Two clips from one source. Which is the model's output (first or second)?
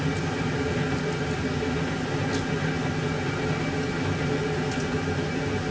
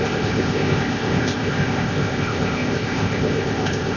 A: second